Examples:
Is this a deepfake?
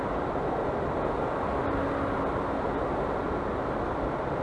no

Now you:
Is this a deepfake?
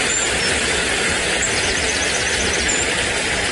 no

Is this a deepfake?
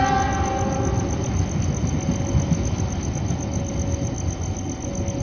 no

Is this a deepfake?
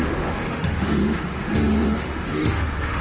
yes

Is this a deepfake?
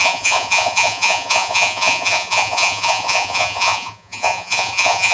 yes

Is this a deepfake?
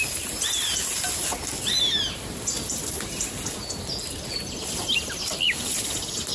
no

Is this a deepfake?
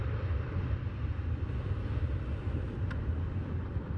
no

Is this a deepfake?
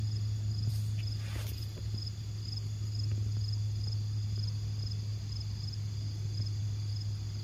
no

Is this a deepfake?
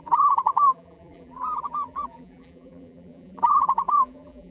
yes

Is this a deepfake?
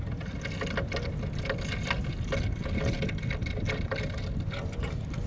no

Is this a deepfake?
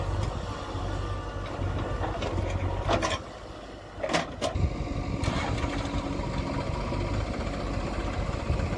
no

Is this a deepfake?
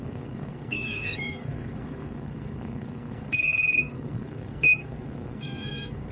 yes